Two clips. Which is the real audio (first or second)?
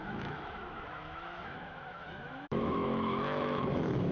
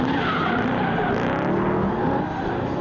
second